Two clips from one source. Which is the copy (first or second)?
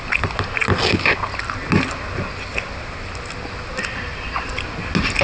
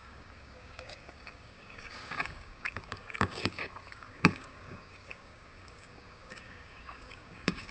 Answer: second